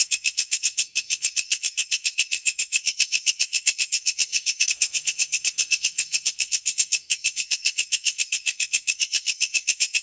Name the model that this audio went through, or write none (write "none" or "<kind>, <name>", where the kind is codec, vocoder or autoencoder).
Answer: codec, SNAC